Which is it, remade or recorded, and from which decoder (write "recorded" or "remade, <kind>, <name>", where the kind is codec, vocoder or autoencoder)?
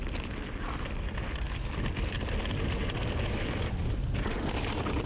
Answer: recorded